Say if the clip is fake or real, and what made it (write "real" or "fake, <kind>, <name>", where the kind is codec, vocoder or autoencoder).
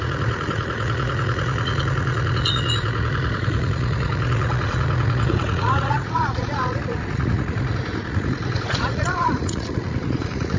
fake, vocoder, Vocos